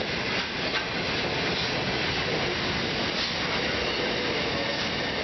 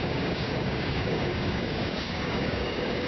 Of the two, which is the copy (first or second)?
second